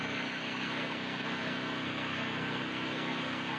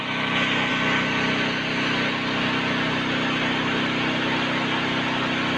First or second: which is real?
second